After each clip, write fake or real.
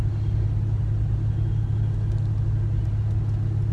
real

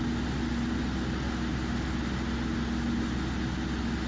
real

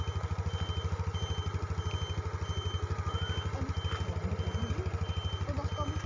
real